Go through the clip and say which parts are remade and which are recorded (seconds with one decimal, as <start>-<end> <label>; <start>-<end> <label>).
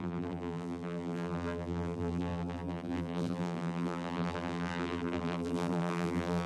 0.0-6.5 remade